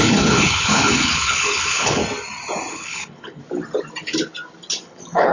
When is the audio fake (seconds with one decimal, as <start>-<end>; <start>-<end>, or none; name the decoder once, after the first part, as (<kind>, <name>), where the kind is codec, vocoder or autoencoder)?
0.0-2.0 (codec, HILCodec); 2.7-3.4; 4.8-5.3